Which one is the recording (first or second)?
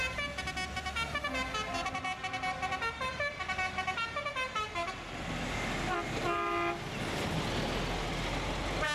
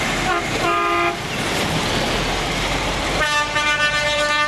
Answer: first